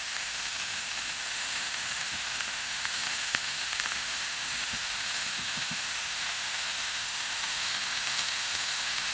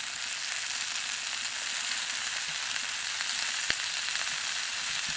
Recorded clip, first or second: second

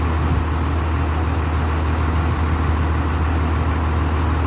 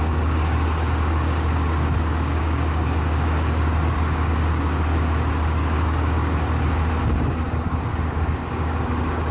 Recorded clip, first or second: first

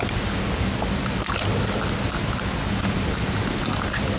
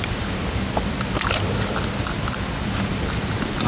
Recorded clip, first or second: first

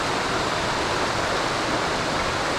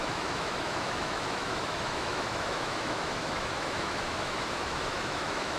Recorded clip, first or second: first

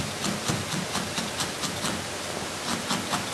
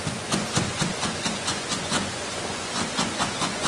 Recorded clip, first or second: first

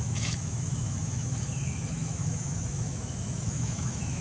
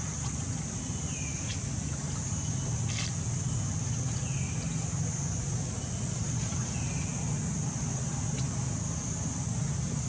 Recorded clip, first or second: second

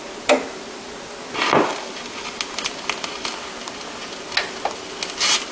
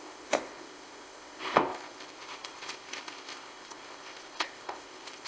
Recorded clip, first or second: first